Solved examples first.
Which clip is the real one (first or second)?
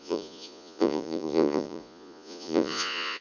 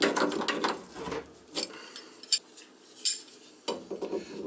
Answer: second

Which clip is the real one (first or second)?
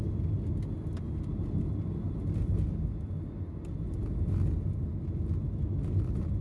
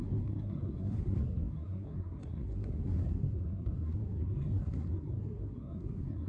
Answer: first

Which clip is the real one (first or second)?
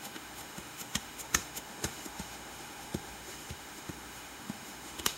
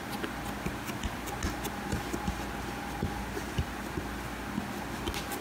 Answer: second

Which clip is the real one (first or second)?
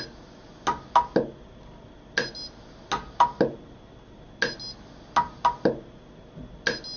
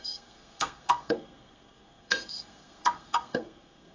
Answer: first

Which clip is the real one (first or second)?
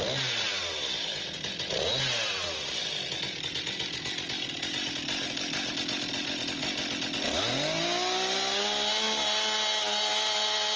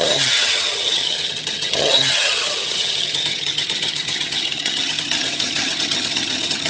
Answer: first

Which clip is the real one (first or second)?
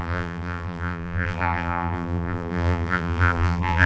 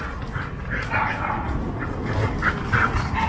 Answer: second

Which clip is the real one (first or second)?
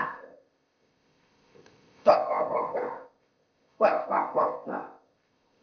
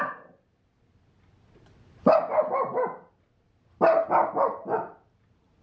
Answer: second